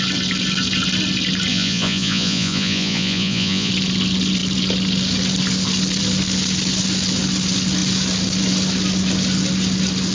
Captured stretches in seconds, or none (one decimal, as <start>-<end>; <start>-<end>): 0.0-1.5; 3.7-10.1